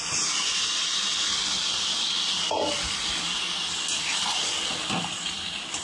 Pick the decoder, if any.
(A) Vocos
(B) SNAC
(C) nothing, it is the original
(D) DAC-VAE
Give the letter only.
C